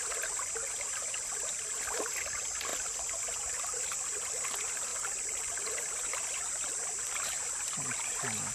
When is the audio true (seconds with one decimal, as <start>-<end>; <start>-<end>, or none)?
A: 0.0-8.5